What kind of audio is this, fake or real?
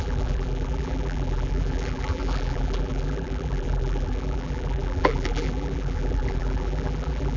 fake